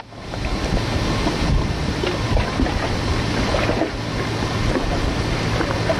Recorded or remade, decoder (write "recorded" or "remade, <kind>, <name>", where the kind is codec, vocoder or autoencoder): recorded